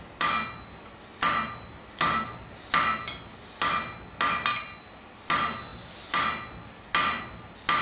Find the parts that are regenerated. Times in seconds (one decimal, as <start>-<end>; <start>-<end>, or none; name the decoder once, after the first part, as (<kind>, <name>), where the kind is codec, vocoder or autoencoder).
none